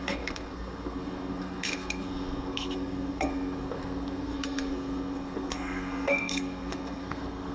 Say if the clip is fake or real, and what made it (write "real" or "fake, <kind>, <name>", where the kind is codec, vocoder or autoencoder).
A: fake, codec, SNAC